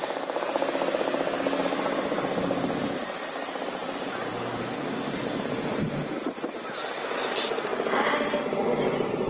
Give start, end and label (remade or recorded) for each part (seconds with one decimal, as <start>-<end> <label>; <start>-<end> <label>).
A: 0.0-9.3 recorded